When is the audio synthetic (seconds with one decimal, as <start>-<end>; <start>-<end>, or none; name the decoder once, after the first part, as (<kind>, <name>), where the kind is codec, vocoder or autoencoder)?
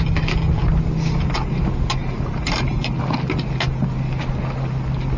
2.0-3.0 (vocoder, BigVGAN v2)